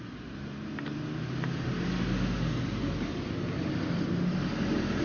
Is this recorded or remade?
recorded